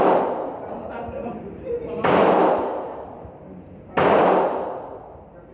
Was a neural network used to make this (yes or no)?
no